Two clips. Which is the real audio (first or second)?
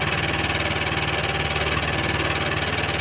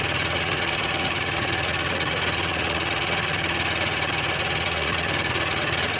first